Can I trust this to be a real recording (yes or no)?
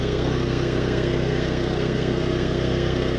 no